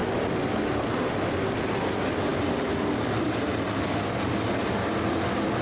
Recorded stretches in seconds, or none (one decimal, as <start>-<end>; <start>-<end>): 0.0-5.6